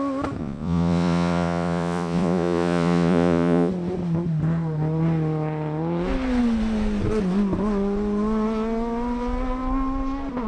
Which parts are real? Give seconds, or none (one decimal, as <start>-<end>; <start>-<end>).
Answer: 0.0-0.4; 3.7-10.5